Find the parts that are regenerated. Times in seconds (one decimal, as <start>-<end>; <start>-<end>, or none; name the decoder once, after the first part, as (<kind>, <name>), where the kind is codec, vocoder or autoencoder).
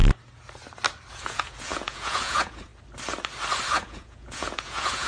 1.1-2.7 (vocoder, Vocos); 3.7-5.1